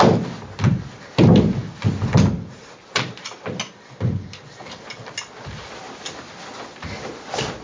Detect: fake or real real